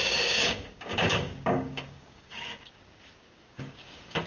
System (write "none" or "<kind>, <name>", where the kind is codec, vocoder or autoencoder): codec, DAC